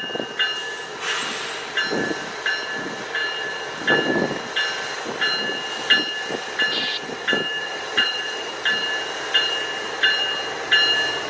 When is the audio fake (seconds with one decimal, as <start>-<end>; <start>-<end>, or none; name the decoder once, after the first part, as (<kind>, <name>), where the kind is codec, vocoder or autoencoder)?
7.6-8.5 (vocoder, Vocos)